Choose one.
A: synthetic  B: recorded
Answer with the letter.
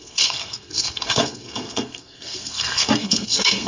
A